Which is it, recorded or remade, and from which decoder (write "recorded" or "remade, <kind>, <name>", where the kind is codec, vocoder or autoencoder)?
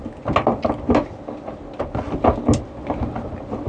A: recorded